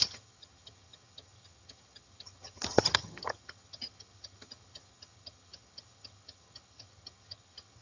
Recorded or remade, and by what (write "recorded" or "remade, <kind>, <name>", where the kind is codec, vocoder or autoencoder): remade, vocoder, HiFi-GAN